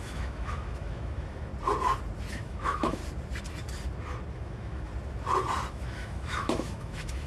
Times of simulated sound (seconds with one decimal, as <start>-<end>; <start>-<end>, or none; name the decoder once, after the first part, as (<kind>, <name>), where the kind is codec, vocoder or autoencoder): 0.0-1.5 (autoencoder, DAC-VAE); 2.3-3.0; 4.3-4.9; 5.7-7.3